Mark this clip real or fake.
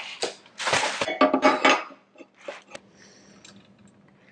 real